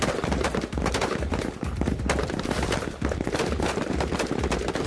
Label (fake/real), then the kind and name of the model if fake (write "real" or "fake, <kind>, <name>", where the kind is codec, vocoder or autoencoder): fake, vocoder, BigVGAN v2